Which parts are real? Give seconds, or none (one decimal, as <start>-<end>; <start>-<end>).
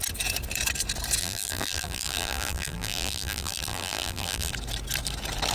0.0-1.2; 4.5-5.5